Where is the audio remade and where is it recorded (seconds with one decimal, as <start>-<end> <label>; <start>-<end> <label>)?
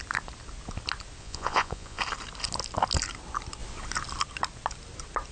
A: 0.0-1.2 recorded; 1.2-2.0 remade; 2.0-5.3 recorded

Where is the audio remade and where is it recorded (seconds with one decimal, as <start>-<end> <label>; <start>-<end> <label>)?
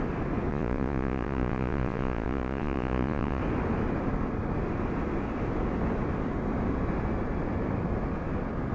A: 0.0-0.5 recorded; 0.5-3.4 remade; 3.4-8.7 recorded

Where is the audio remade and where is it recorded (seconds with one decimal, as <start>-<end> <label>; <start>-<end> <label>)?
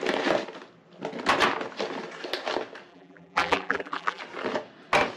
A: 0.0-2.9 recorded; 2.9-4.2 remade; 4.2-5.2 recorded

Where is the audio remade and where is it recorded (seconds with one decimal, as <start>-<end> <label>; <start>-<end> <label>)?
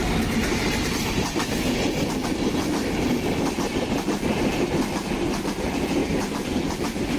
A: 0.0-7.2 recorded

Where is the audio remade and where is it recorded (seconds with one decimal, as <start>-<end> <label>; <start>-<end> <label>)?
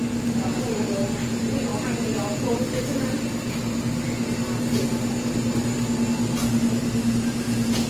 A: 0.0-7.9 recorded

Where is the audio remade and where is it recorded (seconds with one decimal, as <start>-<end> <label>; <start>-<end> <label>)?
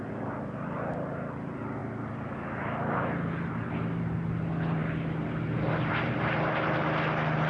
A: 0.0-7.5 recorded